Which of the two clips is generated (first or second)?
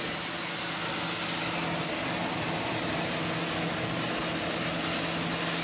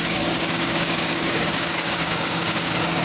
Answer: second